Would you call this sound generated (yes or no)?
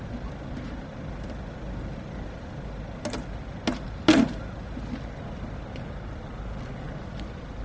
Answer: no